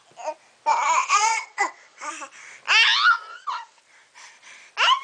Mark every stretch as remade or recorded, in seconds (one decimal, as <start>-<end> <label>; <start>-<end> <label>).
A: 0.0-0.7 recorded; 0.7-2.1 remade; 2.1-3.3 recorded; 3.3-3.8 remade; 3.8-5.0 recorded